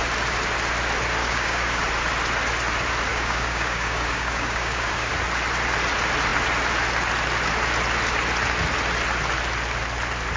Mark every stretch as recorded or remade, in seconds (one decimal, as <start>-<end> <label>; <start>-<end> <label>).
0.0-1.2 recorded; 1.2-1.8 remade; 1.8-3.1 recorded; 3.1-5.1 remade; 5.1-10.4 recorded